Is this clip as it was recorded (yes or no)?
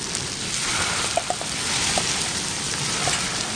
yes